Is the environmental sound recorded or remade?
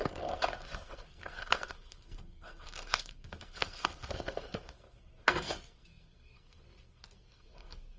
remade